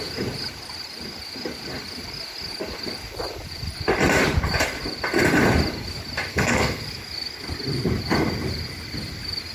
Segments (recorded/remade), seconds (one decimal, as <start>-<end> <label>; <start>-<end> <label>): 0.0-6.3 recorded; 6.3-6.8 remade; 6.8-9.5 recorded